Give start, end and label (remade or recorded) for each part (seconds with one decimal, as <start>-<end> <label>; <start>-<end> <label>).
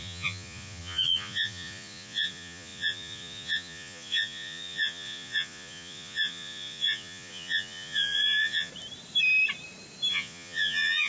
0.0-8.7 remade; 8.7-10.1 recorded; 10.1-11.1 remade